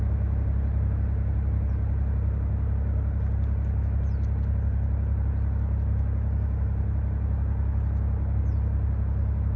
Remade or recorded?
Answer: recorded